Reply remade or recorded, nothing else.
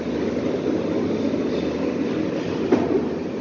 recorded